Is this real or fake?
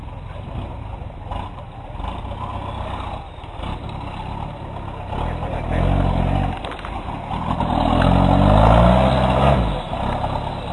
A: real